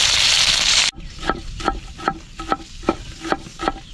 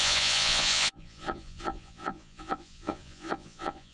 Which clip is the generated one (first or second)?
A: second